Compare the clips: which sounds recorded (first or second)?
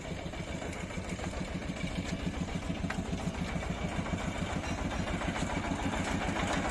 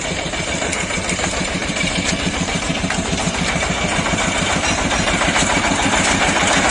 first